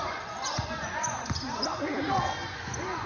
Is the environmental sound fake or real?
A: fake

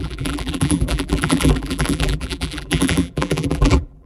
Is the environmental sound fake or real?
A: fake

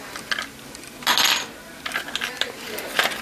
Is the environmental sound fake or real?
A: real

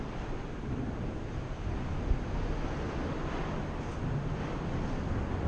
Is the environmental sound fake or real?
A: real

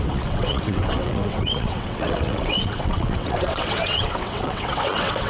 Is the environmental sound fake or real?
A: fake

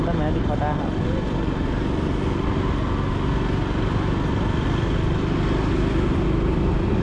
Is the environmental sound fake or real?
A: real